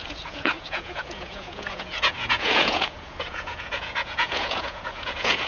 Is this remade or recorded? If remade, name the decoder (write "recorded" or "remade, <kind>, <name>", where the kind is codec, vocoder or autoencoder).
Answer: remade, vocoder, Vocos